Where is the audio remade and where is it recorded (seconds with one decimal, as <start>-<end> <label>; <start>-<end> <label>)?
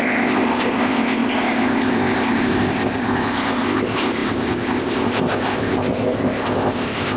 0.0-7.2 remade